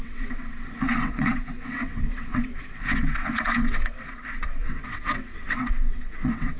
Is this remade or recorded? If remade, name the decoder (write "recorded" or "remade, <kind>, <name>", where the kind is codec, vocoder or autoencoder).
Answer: remade, vocoder, WaveNeXt